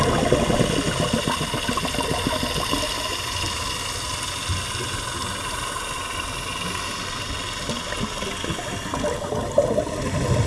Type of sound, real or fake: real